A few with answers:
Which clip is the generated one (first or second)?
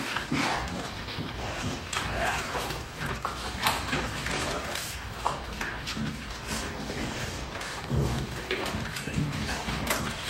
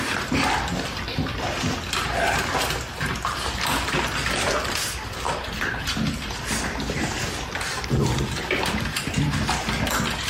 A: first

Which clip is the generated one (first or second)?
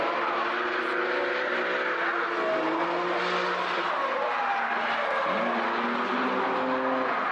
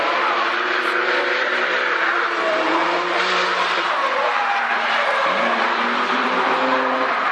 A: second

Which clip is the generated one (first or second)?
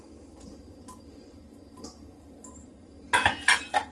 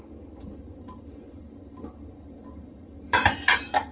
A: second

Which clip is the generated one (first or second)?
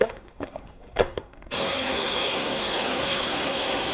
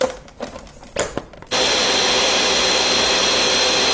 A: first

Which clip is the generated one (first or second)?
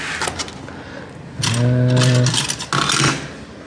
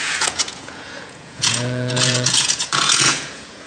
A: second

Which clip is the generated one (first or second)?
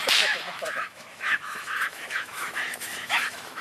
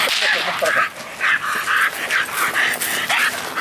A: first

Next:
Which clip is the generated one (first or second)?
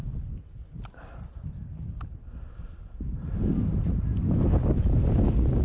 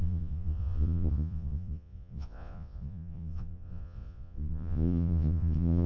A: second